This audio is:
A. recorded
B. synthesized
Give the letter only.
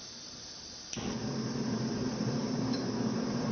B